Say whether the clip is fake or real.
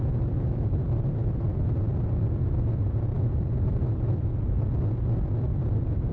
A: real